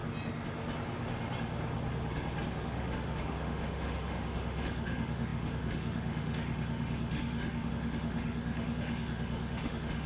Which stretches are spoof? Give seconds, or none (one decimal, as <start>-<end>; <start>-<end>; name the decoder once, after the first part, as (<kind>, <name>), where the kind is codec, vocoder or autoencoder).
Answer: 2.5-10.1 (autoencoder, DAC-VAE)